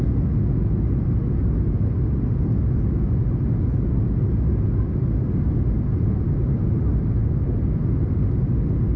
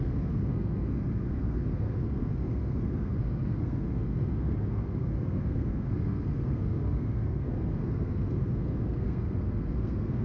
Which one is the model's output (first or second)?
second